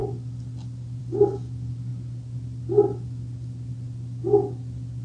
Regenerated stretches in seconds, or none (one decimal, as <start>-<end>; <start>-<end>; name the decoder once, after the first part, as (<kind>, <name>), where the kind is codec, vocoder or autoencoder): none